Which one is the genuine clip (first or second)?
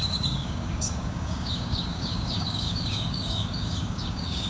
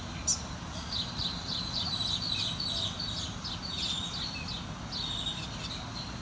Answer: second